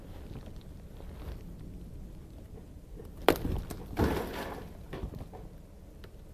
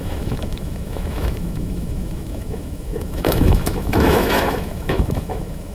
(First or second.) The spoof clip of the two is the second